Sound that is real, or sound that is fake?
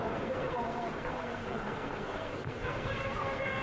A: fake